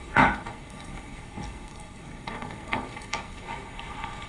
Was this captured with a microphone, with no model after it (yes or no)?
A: no